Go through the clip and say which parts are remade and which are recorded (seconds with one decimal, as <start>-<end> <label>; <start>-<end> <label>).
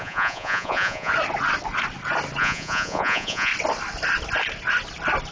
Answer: 0.0-1.1 remade; 1.1-2.4 recorded; 2.4-3.5 remade; 3.5-5.3 recorded